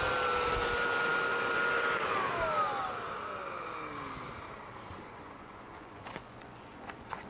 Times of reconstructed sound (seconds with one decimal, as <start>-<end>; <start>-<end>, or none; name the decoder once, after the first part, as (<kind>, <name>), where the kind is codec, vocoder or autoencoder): 5.1-7.3 (vocoder, Vocos)